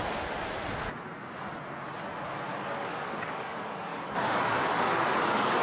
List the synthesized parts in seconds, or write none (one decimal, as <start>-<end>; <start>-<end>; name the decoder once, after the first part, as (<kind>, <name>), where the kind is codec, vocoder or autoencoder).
2.5-5.6 (codec, DAC)